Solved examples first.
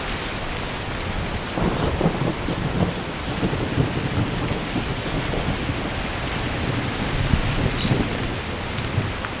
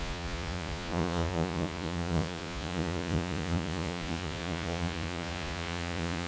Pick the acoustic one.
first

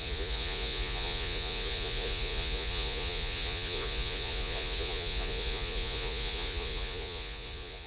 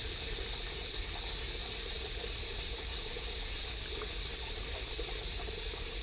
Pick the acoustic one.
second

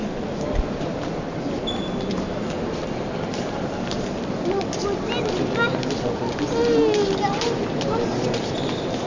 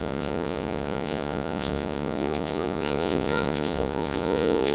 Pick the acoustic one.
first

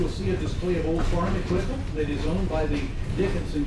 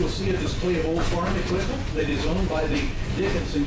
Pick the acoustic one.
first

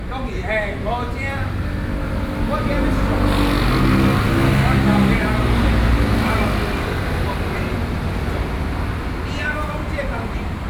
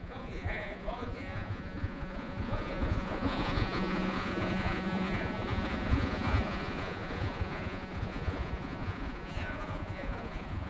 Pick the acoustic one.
first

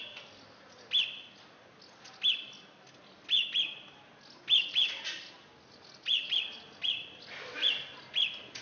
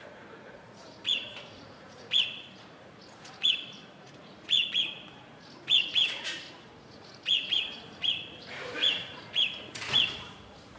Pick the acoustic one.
first